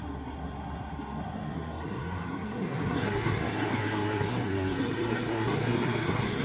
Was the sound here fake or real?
fake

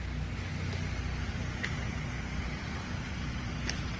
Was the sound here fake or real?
real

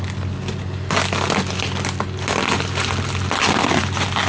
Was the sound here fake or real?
real